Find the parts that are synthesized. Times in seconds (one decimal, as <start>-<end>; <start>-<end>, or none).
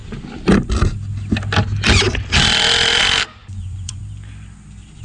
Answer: 3.4-4.0